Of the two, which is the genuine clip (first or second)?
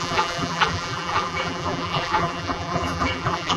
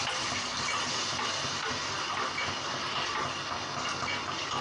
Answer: second